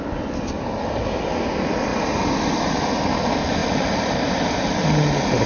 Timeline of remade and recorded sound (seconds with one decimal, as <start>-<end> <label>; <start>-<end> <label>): 0.0-5.5 recorded